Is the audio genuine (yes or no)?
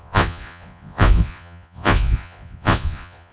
no